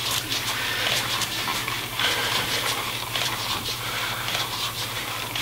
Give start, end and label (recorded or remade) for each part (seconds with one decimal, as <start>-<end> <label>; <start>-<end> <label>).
0.0-0.8 recorded; 0.8-5.4 remade